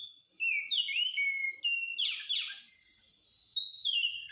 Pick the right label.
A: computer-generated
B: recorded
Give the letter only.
B